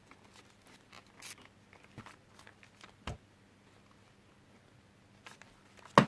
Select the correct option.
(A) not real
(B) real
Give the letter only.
B